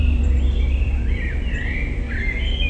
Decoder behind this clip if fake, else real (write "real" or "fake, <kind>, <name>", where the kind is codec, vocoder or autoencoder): fake, vocoder, BigVGAN v2